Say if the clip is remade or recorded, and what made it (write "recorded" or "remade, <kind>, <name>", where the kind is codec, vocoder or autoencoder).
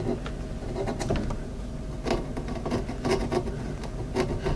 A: recorded